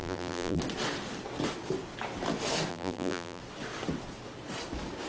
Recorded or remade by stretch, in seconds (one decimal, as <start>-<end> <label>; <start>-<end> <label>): 0.0-0.6 remade; 0.6-2.7 recorded; 2.7-3.4 remade; 3.4-5.1 recorded